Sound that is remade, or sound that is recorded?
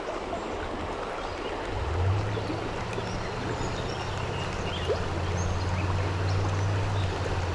recorded